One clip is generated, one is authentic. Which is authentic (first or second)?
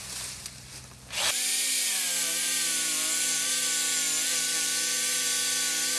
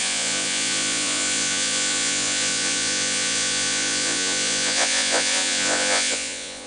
first